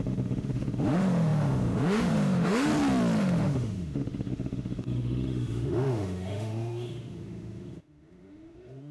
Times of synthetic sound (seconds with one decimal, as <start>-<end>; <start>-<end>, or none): 0.0-2.7; 3.2-8.9